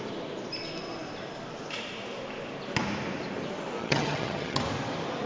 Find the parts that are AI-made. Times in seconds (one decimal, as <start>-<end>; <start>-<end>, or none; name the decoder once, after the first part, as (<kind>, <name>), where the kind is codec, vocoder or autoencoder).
3.8-4.6 (vocoder, HiFi-GAN)